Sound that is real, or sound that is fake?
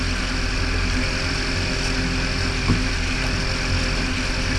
real